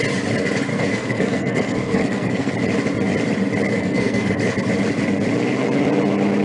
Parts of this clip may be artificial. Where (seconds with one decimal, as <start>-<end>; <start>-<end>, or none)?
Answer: 0.7-2.5; 3.7-4.4